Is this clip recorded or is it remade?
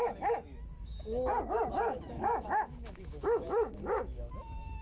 remade